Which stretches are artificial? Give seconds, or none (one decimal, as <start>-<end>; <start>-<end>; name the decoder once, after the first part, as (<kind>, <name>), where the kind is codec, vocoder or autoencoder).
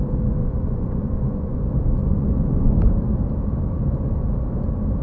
0.4-1.6 (vocoder, Vocos); 2.0-2.7